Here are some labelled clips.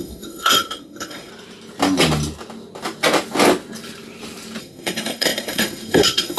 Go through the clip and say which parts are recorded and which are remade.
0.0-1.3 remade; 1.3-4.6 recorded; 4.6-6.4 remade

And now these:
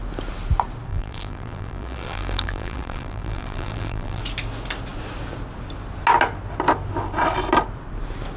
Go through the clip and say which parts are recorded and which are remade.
0.0-0.9 recorded; 0.9-4.2 remade; 4.2-8.4 recorded

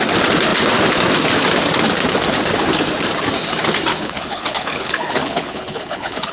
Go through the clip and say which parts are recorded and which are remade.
0.0-3.9 recorded; 3.9-6.3 remade

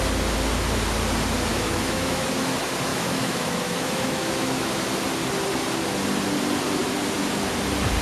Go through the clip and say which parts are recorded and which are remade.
0.0-1.5 recorded; 1.5-2.3 remade; 2.3-2.9 recorded; 2.9-4.7 remade; 4.7-8.0 recorded

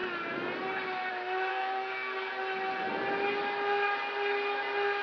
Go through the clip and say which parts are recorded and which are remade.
0.0-1.5 recorded; 1.5-2.3 remade; 2.3-5.0 recorded

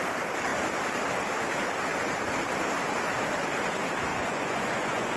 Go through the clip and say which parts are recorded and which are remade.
0.0-4.1 recorded; 4.1-5.2 remade

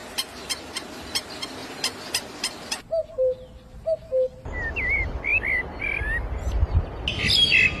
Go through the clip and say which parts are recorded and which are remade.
0.0-7.8 recorded

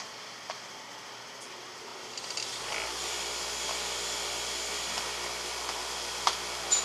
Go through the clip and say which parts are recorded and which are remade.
0.0-6.8 recorded